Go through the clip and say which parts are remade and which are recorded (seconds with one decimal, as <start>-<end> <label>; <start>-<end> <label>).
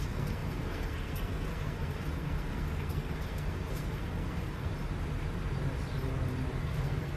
0.0-4.7 remade; 4.7-6.6 recorded; 6.6-7.2 remade